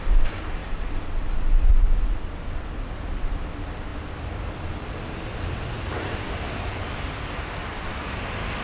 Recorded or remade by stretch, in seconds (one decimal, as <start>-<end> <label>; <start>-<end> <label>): 0.0-8.6 recorded